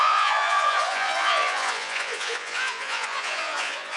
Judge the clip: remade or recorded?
remade